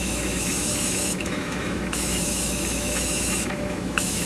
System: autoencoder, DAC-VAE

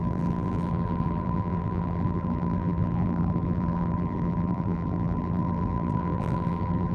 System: vocoder, BigVGAN v2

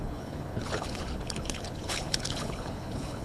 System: codec, HILCodec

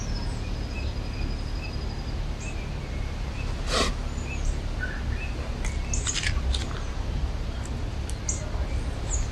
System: none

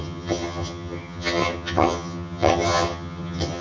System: vocoder, HiFi-GAN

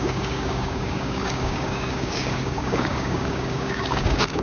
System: codec, DAC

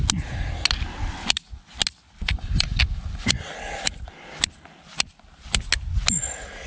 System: none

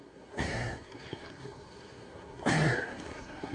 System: codec, SNAC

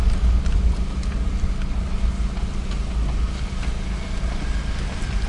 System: none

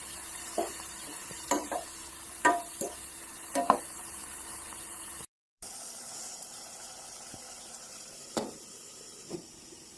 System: vocoder, BigVGAN v2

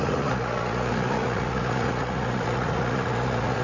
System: vocoder, Vocos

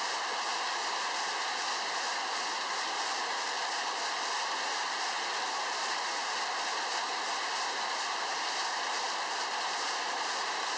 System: none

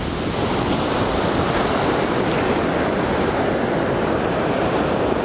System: none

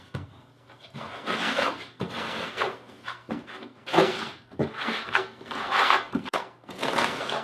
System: codec, SNAC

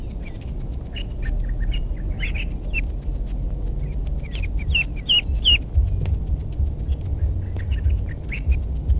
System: none